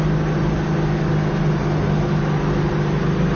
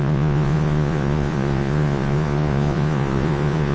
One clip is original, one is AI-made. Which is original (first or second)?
first